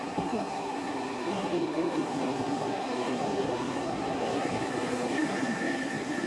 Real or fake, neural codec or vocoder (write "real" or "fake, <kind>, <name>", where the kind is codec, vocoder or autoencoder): fake, codec, SNAC